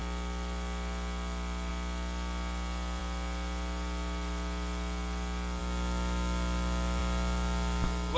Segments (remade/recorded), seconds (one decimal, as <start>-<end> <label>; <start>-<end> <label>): 0.0-1.7 remade; 1.7-3.0 recorded; 3.0-5.6 remade; 5.6-8.2 recorded

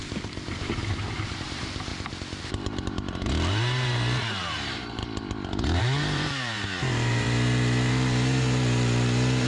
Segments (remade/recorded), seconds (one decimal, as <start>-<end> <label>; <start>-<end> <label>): 0.0-1.9 remade; 1.9-2.4 recorded; 2.4-5.0 remade; 5.0-5.8 recorded; 5.8-9.5 remade

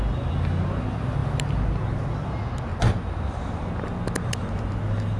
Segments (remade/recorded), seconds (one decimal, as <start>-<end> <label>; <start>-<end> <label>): 0.0-2.7 recorded; 2.7-3.4 remade; 3.4-5.2 recorded